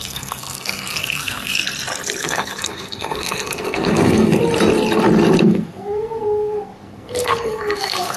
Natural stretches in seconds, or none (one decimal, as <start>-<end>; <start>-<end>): 1.6-2.2; 4.4-5.4